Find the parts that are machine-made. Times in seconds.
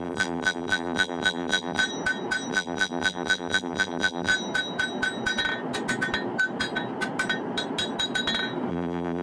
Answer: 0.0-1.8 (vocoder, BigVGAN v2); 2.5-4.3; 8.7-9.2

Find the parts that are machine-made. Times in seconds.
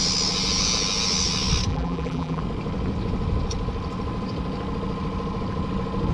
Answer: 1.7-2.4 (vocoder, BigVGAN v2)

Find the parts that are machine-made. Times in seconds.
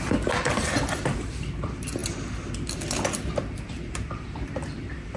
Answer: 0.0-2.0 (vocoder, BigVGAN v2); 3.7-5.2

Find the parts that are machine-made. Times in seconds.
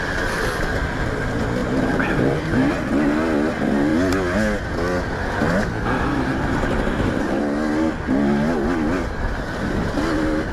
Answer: 1.6-2.7 (vocoder, BigVGAN v2); 6.3-7.4